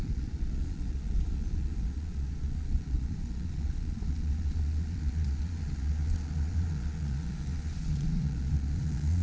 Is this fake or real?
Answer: fake